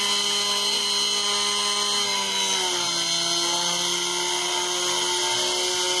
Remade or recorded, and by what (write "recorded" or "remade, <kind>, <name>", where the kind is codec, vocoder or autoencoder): recorded